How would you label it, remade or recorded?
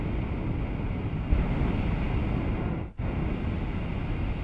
recorded